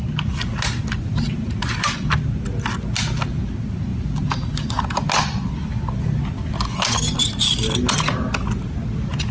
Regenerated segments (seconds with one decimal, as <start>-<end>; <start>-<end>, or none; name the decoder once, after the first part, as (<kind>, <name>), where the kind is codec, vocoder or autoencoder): none